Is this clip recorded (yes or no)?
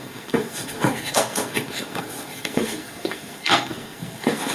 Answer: no